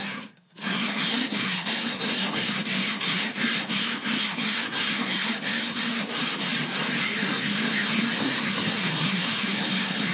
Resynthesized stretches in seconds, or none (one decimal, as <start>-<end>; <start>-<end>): 0.0-6.2; 7.0-10.1